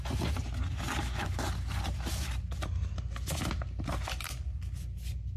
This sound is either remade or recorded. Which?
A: recorded